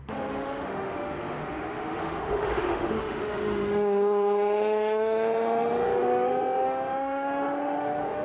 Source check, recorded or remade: remade